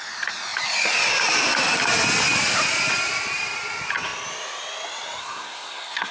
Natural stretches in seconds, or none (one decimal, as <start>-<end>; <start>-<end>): 0.0-5.2